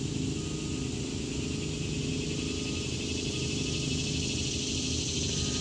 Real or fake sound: real